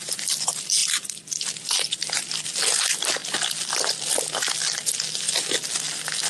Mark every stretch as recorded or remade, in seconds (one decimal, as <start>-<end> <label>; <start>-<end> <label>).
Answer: 0.0-6.3 recorded